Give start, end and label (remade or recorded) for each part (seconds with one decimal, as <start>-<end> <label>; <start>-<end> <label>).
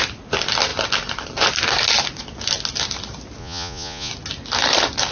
0.0-3.4 recorded; 3.4-4.1 remade; 4.1-5.1 recorded